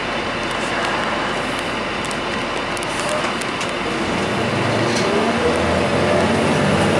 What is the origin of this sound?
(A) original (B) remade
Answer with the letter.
A